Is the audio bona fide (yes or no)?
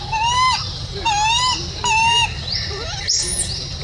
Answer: yes